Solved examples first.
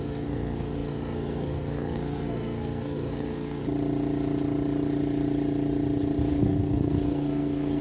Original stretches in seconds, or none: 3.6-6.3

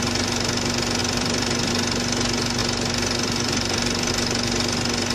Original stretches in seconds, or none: 0.0-1.0; 1.7-2.6; 4.1-5.1

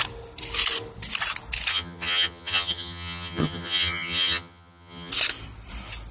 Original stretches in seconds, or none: 0.0-1.7; 5.1-6.1

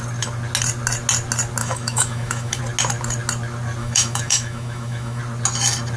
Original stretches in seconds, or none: 0.0-1.6; 2.6-3.8; 5.2-6.0

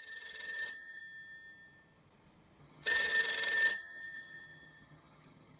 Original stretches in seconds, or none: 1.0-2.6; 3.1-3.7

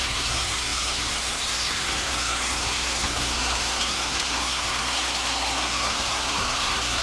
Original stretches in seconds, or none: none

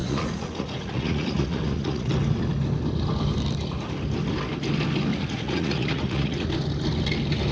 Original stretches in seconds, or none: 2.1-5.1; 6.5-7.5

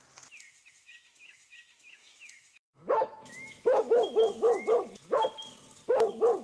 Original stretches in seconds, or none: 0.0-0.8; 4.6-6.4